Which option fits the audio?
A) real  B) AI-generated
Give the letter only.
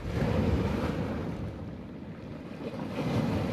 A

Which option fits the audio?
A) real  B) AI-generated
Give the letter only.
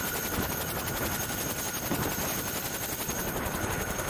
A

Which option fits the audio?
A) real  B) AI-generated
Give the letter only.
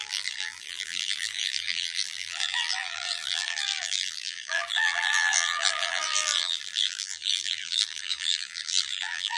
B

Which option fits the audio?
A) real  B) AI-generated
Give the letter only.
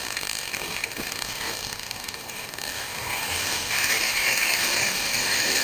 B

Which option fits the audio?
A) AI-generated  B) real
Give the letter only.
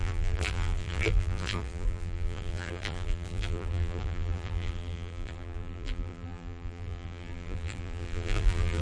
A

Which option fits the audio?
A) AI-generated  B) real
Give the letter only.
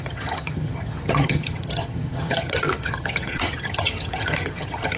A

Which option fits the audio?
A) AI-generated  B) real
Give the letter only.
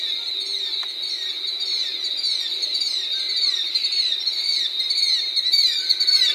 B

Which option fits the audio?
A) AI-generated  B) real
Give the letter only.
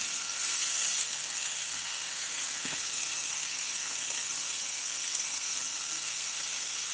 A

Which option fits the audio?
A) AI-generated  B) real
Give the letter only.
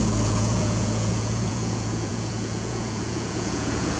A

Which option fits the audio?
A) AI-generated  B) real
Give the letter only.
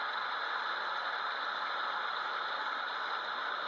B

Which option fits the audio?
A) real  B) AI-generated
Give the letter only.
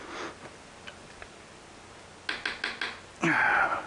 A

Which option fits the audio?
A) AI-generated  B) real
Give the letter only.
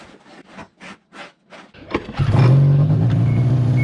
B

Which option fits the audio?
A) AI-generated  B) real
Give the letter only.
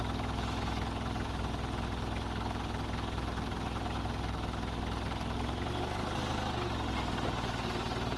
B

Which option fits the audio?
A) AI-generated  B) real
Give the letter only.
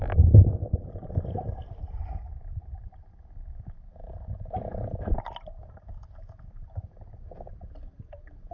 B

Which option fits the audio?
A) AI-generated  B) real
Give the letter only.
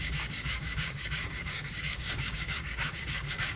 A